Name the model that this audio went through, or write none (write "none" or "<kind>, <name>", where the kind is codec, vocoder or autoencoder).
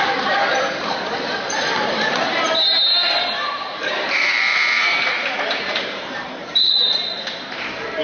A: vocoder, BigVGAN v2